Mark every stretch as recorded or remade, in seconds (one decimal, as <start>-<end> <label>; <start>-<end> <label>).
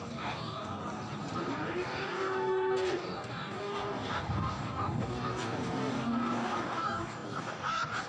0.0-0.8 remade; 0.8-1.4 recorded; 1.4-8.1 remade